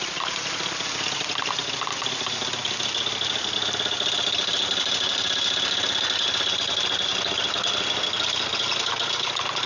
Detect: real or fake real